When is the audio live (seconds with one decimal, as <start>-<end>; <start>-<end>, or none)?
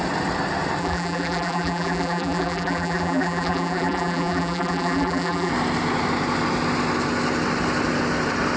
0.0-0.8; 5.5-8.6